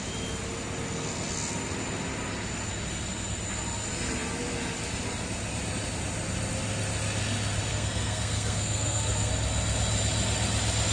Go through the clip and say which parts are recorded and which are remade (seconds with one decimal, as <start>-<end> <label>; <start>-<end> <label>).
0.0-7.7 recorded; 7.7-9.3 remade; 9.3-10.9 recorded